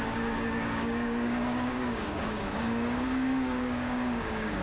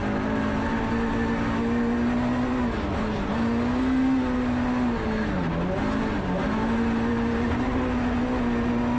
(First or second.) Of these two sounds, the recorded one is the second